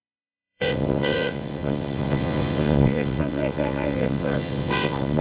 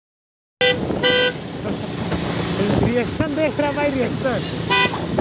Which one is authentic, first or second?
second